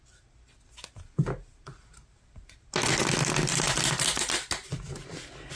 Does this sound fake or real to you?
real